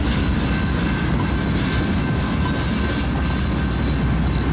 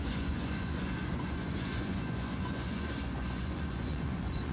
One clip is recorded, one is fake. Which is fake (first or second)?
second